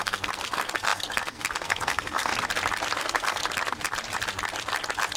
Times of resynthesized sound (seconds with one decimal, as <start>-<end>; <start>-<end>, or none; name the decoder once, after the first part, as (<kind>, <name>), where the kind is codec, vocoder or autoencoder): 0.0-2.3 (codec, SNAC); 3.0-3.4